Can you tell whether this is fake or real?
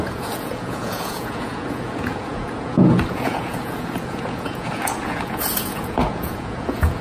fake